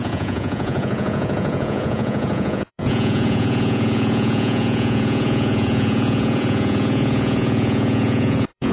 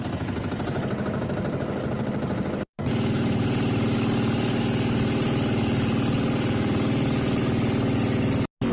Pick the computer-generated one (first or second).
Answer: first